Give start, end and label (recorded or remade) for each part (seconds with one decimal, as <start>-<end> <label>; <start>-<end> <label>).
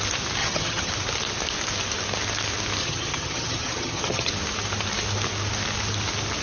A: 0.0-0.4 recorded; 0.4-0.9 remade; 0.9-2.8 recorded; 2.8-4.3 remade; 4.3-6.4 recorded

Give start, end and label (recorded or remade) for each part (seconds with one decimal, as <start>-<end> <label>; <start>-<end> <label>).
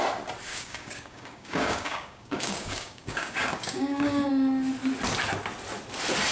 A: 0.0-0.5 recorded; 0.5-4.3 remade; 4.3-6.3 recorded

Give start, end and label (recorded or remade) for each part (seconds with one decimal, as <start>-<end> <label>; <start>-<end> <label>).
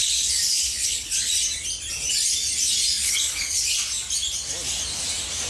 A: 0.0-1.3 remade; 1.3-3.0 recorded; 3.0-3.7 remade; 3.7-5.5 recorded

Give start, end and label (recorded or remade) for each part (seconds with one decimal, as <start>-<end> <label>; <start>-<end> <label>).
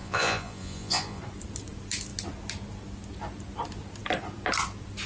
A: 0.0-1.2 remade; 1.2-5.1 recorded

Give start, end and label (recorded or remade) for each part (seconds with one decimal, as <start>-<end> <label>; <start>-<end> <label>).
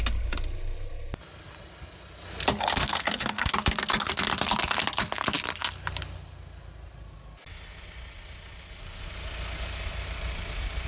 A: 0.0-2.8 recorded; 2.8-3.5 remade; 3.5-10.9 recorded